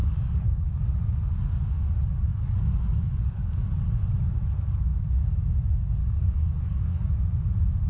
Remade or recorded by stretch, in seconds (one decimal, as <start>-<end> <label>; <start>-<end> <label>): 0.0-0.8 remade; 0.8-2.3 recorded; 2.3-3.6 remade; 3.6-6.0 recorded; 6.0-7.1 remade; 7.1-7.9 recorded